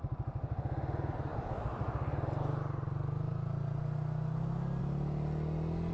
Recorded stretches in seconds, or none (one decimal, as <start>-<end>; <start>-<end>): 0.0-5.9